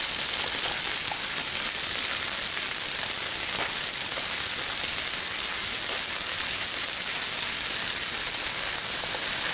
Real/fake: real